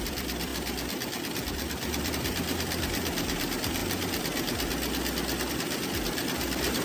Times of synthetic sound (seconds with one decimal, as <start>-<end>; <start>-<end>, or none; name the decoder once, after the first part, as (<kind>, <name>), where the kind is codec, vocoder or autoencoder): 0.0-3.8 (vocoder, BigVGAN v2); 5.5-6.8